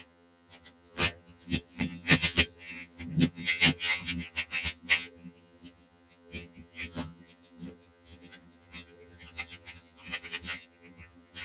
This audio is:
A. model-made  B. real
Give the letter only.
A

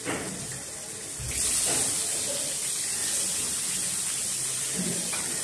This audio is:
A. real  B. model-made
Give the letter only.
A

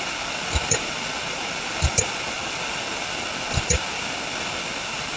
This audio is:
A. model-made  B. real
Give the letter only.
B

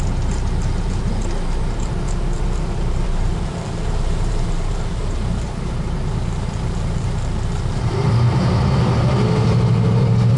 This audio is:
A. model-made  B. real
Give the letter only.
A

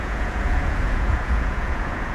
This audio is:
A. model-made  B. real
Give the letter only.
A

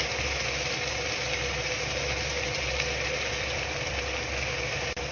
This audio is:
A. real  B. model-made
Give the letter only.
A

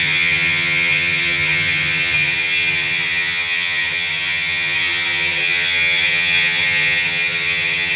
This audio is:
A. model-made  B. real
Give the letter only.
A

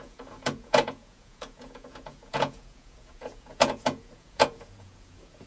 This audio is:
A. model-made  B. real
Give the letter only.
A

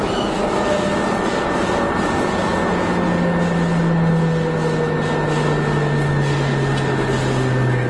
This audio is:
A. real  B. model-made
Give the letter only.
A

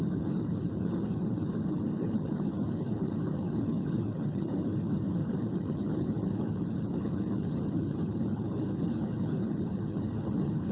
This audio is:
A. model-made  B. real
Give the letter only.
A